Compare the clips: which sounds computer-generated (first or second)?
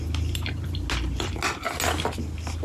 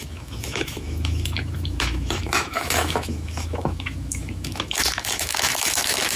second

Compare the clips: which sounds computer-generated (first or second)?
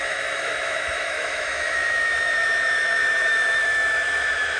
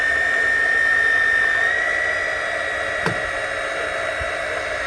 first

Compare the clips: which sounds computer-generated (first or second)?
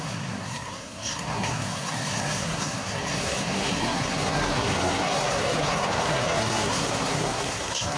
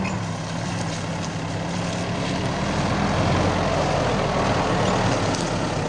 first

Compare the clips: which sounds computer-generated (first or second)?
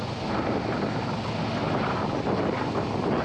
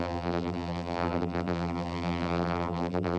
second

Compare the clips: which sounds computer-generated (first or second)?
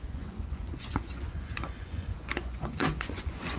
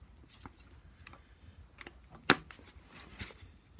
first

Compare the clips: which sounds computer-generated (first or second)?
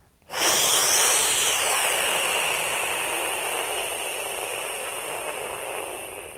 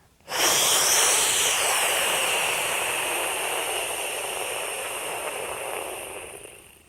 second